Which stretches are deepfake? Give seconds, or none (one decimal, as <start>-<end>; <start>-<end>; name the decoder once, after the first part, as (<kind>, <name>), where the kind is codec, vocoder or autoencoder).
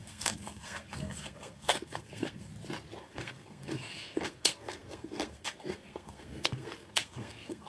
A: 0.0-2.5 (codec, SNAC); 3.0-7.7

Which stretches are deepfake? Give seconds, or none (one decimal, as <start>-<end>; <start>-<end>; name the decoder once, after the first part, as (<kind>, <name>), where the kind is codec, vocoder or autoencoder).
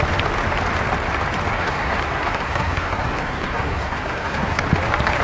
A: 1.5-4.6 (codec, SNAC)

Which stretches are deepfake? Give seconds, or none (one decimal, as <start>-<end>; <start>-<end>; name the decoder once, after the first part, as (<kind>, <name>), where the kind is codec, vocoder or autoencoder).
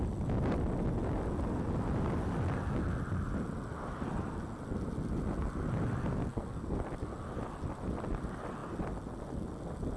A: 6.3-6.8 (codec, SNAC)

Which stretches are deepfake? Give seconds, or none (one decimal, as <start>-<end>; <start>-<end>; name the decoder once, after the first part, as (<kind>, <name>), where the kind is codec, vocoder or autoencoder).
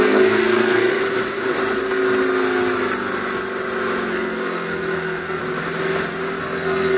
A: 0.0-1.0 (codec, SNAC); 4.1-5.4; 6.4-7.0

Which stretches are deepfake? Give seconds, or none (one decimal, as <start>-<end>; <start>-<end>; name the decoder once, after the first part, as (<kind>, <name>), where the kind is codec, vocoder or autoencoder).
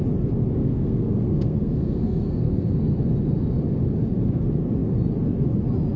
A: 0.6-2.8 (codec, SNAC)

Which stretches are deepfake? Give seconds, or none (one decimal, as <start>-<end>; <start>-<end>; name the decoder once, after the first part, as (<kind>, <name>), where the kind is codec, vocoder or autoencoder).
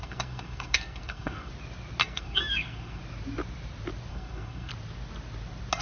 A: 0.0-1.5 (codec, SNAC); 2.0-3.0; 4.1-4.7